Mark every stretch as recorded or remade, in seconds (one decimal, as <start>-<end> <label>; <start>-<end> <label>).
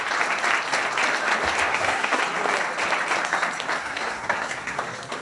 0.0-1.7 recorded; 1.7-2.2 remade; 2.2-3.8 recorded; 3.8-4.8 remade; 4.8-5.2 recorded